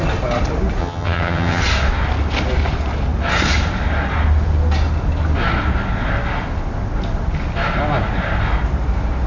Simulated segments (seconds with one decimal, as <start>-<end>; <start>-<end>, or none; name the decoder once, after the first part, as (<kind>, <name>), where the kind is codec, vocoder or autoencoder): 0.8-1.6 (vocoder, HiFi-GAN)